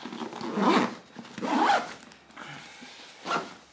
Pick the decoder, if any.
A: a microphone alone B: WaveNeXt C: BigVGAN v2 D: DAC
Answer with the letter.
A